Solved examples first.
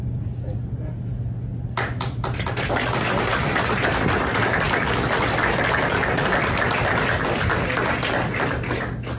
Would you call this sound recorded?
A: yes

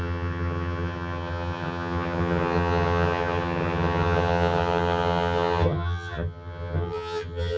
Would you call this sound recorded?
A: no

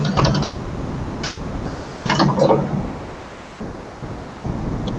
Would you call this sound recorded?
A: yes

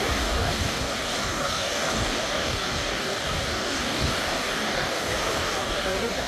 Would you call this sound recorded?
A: no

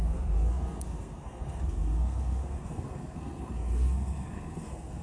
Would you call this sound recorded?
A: no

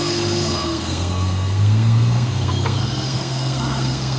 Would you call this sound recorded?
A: no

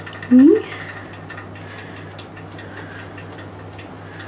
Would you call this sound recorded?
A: yes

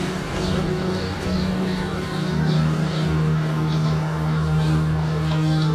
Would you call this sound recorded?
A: no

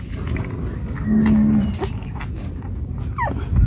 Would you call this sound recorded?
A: yes